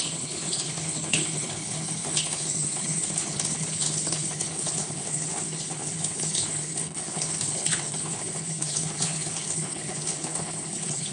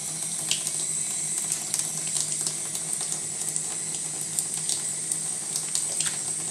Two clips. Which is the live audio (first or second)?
second